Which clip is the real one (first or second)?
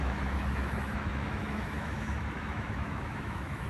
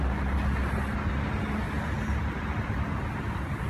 second